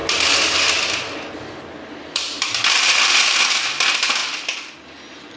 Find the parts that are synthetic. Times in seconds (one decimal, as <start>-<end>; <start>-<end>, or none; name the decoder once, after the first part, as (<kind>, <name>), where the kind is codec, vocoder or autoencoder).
0.0-3.1 (vocoder, BigVGAN v2)